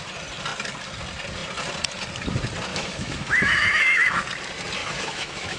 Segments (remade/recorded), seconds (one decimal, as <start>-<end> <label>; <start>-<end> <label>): 0.0-2.7 recorded; 2.7-4.2 remade; 4.2-4.8 recorded; 4.8-5.6 remade